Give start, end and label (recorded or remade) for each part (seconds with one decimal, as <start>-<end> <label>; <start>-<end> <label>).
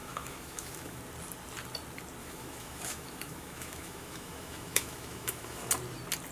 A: 0.0-1.0 remade; 1.0-2.2 recorded; 2.2-5.7 remade; 5.7-6.3 recorded